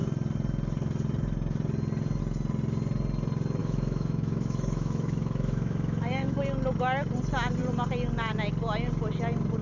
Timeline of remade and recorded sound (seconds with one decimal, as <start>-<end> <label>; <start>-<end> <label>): 0.0-3.6 recorded; 3.6-6.4 remade; 6.4-9.6 recorded